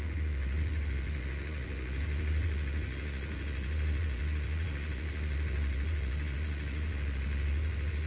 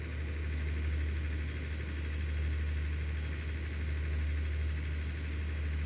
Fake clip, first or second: first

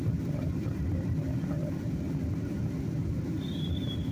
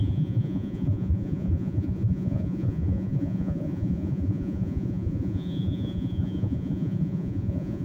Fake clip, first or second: second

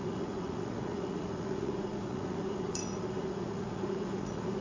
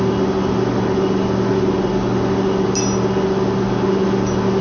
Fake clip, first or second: first